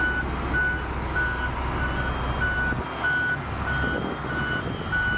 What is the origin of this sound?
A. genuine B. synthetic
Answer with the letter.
A